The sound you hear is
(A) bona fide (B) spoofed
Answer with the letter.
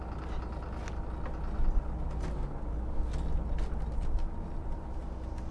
A